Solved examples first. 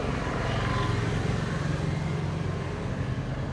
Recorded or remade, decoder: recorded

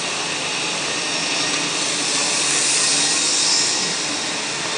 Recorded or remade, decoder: recorded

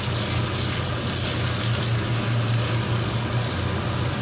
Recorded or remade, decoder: recorded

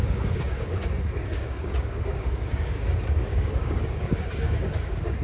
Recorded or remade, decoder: remade, codec, DAC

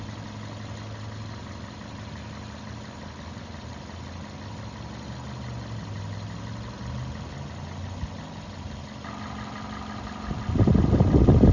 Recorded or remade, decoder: recorded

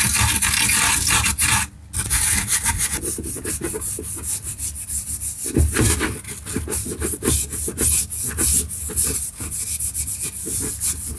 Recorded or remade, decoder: recorded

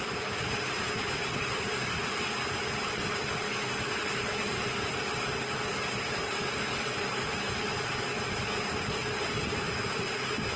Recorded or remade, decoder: recorded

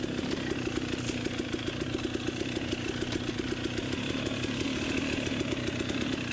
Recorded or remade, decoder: recorded